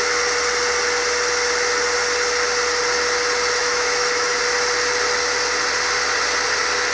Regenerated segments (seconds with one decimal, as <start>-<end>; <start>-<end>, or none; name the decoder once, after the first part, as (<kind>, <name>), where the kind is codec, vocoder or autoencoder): 3.6-4.4 (autoencoder, DAC-VAE)